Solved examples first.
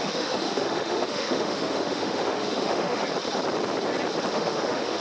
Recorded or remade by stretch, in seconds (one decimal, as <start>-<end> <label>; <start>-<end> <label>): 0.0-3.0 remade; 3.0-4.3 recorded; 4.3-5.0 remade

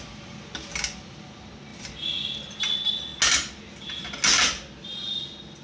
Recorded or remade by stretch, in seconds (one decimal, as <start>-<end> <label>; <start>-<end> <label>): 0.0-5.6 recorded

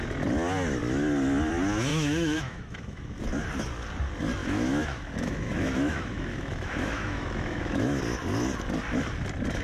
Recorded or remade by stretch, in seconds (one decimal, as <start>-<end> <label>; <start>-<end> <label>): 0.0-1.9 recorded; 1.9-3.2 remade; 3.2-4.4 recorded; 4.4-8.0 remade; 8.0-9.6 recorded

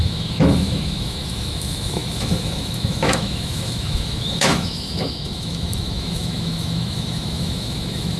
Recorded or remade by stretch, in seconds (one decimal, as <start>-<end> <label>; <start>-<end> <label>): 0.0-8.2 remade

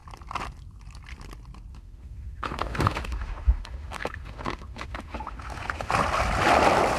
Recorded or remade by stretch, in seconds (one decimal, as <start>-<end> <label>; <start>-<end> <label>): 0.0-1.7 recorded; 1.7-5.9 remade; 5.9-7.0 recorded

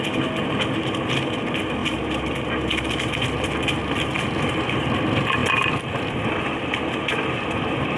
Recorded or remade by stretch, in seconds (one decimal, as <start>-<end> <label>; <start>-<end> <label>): 0.0-8.0 recorded